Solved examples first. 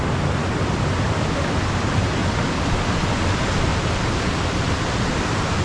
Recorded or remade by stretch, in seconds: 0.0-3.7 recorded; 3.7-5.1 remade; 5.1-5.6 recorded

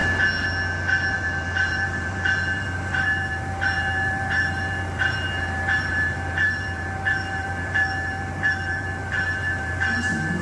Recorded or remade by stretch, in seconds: 0.0-1.1 recorded; 1.1-10.4 remade

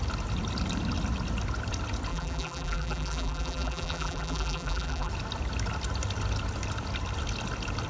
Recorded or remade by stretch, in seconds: 0.0-2.1 recorded; 2.1-5.1 remade; 5.1-7.9 recorded

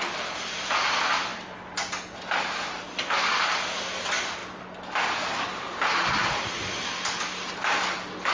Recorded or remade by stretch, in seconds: 0.0-8.3 recorded

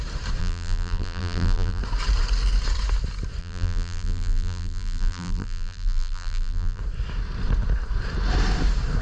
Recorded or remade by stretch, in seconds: 0.0-0.4 recorded; 0.4-1.8 remade; 1.8-3.4 recorded; 3.4-6.8 remade; 6.8-9.0 recorded